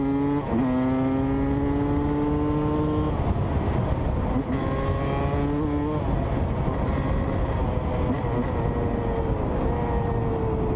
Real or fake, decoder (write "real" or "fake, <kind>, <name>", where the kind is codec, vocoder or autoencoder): real